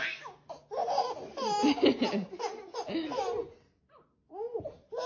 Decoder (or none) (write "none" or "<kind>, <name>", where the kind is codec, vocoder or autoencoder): none